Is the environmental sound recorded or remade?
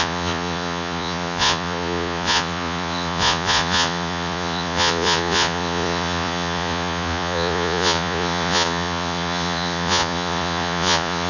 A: remade